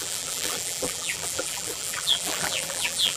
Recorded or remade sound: remade